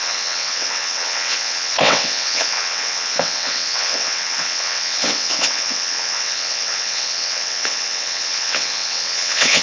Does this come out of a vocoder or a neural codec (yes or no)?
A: yes